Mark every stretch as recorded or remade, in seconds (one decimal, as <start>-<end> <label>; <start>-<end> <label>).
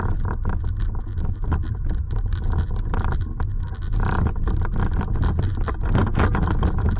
0.0-7.0 recorded